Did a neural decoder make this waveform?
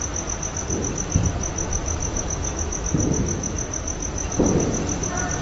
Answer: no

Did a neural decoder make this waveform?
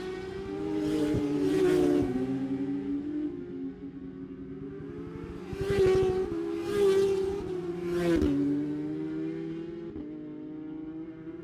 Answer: no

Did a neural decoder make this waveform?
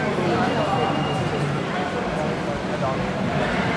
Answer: no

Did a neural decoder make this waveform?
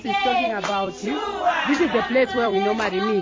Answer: yes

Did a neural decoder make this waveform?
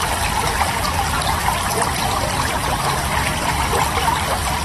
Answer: no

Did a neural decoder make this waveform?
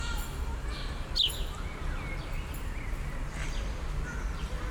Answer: no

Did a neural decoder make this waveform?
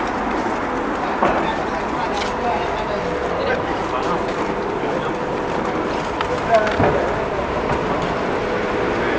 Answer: no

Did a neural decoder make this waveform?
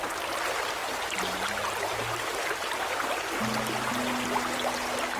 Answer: no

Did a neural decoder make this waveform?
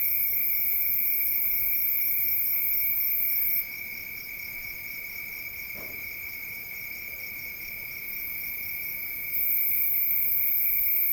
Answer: yes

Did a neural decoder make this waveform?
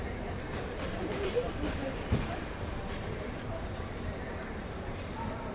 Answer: yes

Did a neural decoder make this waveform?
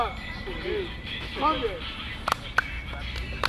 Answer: no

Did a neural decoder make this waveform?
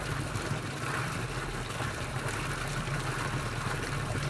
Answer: no